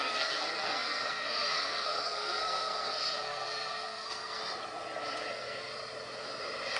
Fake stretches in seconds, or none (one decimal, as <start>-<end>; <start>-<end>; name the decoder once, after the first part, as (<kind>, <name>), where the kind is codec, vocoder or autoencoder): 0.0-4.4 (codec, SNAC); 5.3-5.7